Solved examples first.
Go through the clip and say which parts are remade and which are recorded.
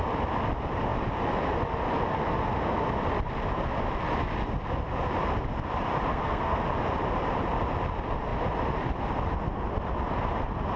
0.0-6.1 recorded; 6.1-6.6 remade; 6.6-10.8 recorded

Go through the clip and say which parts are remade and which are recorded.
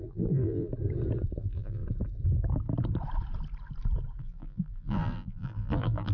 0.0-0.7 remade; 0.7-1.4 recorded; 1.4-1.8 remade; 1.8-4.2 recorded; 4.2-6.1 remade